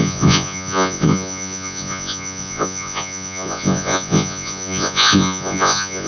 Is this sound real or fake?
fake